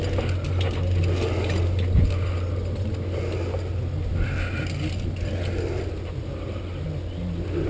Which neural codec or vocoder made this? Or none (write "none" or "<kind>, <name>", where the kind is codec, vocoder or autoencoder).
none